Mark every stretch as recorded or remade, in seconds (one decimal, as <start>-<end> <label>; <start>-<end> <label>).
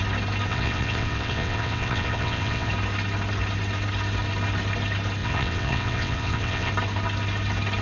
0.0-0.5 recorded; 0.5-2.7 remade; 2.7-5.2 recorded; 5.2-6.7 remade; 6.7-7.8 recorded